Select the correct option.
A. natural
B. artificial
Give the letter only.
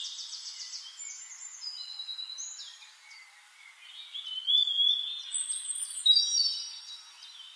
A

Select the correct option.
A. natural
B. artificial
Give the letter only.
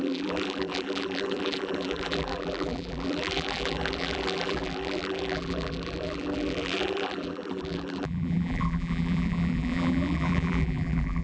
B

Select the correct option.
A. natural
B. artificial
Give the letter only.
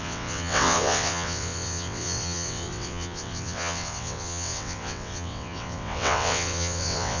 B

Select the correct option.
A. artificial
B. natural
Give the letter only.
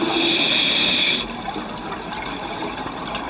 B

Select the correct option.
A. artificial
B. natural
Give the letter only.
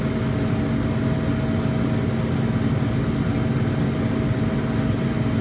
B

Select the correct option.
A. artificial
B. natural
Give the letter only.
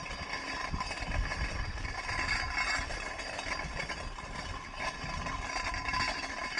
B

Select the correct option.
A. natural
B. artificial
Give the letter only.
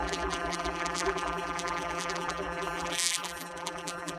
B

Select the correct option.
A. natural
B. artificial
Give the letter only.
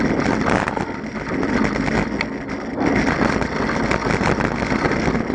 A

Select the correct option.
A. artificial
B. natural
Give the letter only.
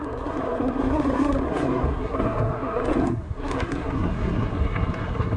A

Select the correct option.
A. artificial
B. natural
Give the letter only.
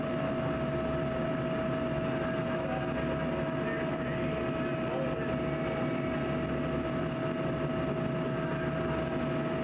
B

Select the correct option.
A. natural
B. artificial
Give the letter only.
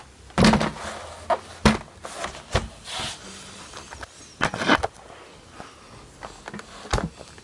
A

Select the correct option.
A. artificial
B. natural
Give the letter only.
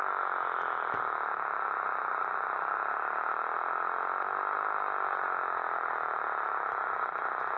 B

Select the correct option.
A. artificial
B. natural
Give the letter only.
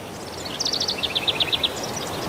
B